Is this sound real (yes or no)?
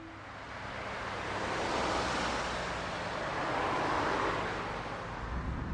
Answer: yes